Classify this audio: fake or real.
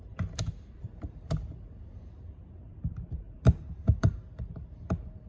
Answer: fake